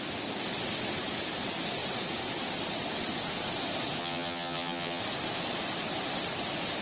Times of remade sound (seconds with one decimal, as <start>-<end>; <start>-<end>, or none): 4.0-5.0